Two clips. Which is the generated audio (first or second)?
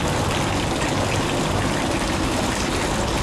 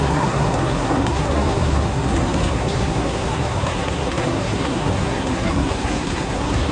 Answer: second